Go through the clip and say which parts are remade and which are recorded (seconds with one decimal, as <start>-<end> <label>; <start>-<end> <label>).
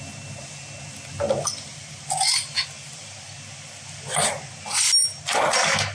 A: 0.0-5.9 recorded